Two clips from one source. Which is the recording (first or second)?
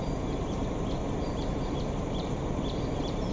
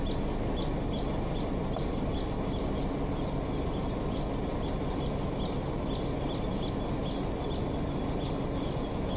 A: second